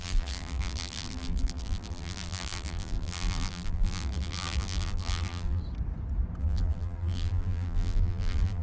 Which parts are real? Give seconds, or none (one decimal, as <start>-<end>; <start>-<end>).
5.6-6.4